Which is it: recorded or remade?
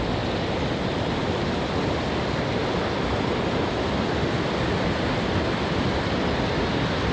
recorded